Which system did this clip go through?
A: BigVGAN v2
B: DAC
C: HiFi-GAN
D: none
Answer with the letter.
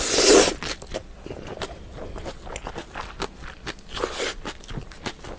D